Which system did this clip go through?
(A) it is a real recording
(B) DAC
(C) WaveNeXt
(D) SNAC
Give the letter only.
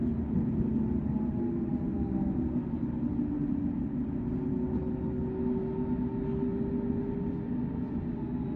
A